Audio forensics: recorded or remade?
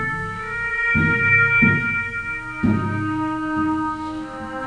remade